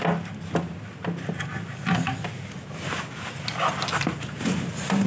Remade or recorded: recorded